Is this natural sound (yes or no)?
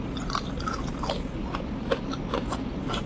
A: yes